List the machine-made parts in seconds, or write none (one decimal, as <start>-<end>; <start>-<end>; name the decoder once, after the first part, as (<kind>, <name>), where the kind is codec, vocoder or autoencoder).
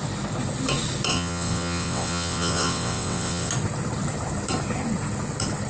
1.1-3.5 (vocoder, WaveNeXt)